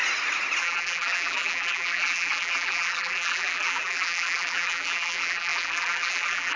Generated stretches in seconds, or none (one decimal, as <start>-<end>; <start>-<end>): 0.6-6.6